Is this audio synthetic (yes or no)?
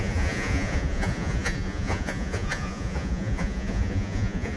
yes